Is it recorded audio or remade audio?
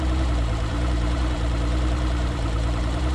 remade